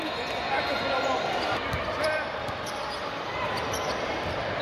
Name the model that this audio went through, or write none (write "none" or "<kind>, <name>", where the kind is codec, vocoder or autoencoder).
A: vocoder, BigVGAN v2